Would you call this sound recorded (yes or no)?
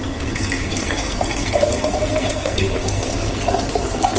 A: no